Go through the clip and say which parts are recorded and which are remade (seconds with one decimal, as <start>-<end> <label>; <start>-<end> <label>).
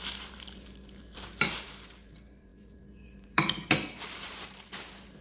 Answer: 0.0-5.2 remade